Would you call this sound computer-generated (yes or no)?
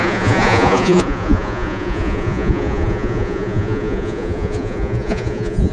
yes